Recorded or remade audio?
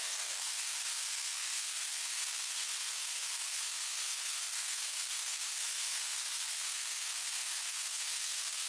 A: remade